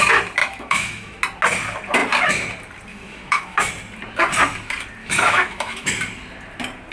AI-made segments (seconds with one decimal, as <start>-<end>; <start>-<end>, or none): 0.4-1.2; 2.9-3.7; 5.0-5.9